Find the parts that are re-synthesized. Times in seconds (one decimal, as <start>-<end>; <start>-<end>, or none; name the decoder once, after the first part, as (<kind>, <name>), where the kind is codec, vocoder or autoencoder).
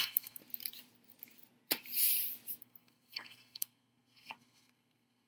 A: 0.0-0.4 (codec, SNAC); 2.6-5.3